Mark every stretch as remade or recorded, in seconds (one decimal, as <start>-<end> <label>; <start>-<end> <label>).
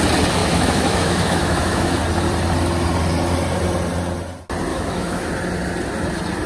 0.0-0.4 recorded; 0.4-2.0 remade; 2.0-4.7 recorded; 4.7-5.3 remade; 5.3-6.5 recorded